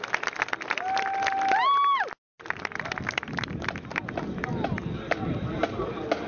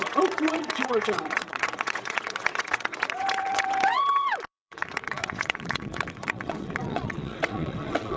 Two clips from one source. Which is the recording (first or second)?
first